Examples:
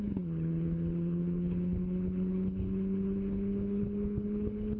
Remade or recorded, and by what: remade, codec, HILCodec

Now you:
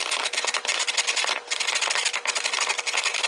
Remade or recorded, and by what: recorded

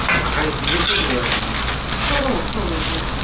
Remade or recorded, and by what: recorded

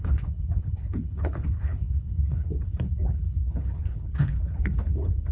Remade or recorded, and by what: remade, codec, HILCodec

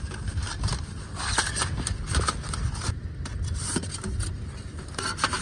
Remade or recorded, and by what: recorded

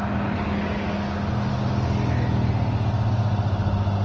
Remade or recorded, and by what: recorded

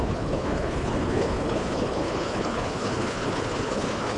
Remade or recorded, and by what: remade, codec, HILCodec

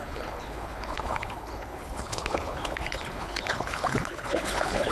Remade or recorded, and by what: remade, codec, HILCodec